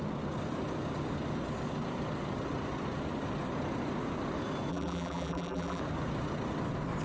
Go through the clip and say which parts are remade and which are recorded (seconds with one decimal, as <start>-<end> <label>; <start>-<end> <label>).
0.0-4.7 recorded; 4.7-5.8 remade; 5.8-7.0 recorded